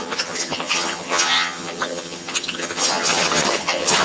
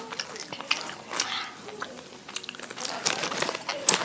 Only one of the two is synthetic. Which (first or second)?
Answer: first